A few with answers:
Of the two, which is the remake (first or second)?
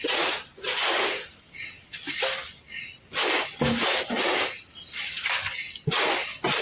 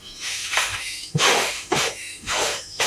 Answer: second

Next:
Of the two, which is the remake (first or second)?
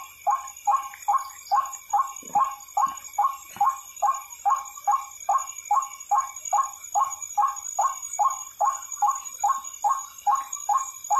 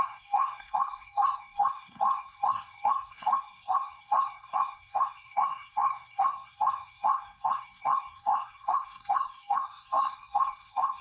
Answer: second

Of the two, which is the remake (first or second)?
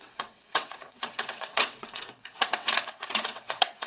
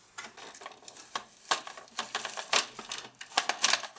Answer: first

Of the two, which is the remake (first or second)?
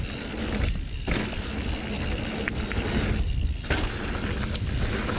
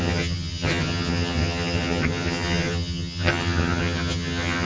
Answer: second